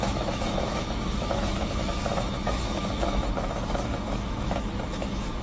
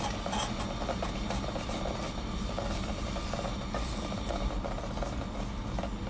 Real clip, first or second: second